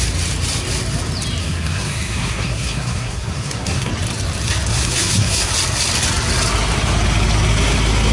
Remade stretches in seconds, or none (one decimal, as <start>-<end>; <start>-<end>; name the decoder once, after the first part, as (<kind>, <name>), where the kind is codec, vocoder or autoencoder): 1.4-3.9 (codec, SNAC); 4.7-5.5